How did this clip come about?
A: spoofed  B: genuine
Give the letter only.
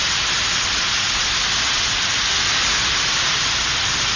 B